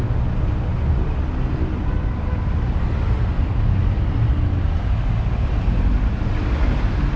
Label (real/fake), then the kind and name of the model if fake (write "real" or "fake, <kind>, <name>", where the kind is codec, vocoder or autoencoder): real